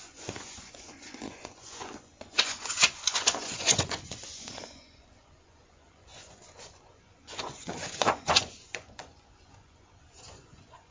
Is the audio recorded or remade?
remade